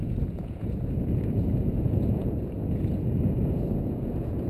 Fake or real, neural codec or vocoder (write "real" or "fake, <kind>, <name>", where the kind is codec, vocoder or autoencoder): fake, vocoder, Vocos